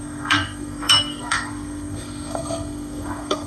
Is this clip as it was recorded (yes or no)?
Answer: no